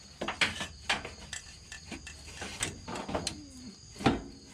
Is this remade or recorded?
recorded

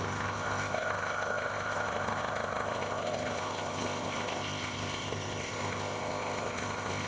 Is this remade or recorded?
remade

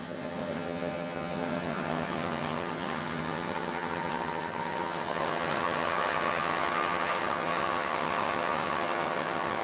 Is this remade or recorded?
remade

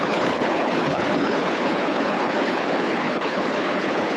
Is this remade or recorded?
remade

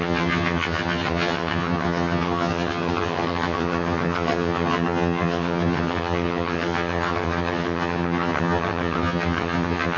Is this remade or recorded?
remade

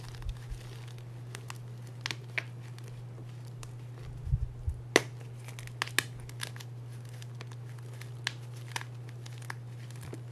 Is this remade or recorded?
recorded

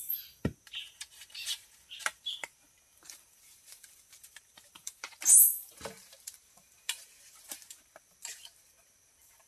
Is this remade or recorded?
remade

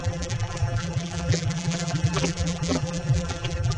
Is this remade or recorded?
remade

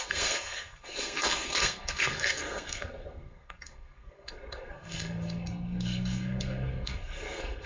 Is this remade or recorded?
remade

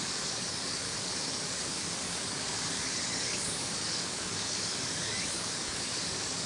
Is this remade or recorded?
remade